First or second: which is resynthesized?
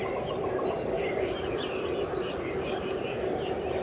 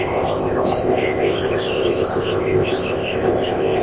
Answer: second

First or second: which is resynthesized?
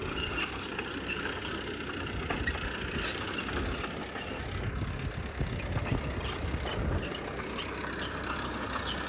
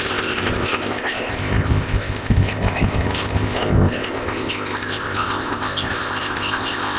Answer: second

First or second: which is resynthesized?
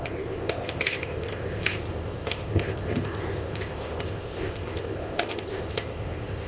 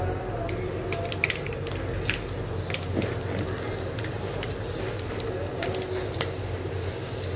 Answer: first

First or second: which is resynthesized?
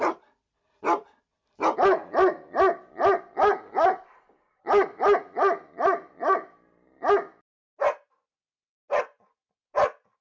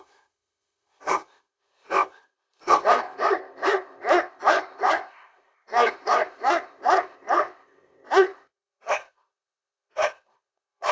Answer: second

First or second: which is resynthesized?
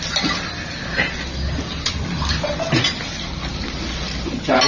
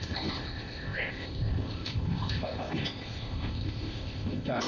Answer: second